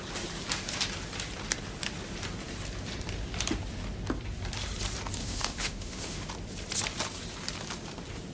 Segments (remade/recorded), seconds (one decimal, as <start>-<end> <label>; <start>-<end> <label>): 0.0-5.2 recorded; 5.2-6.3 remade; 6.3-8.3 recorded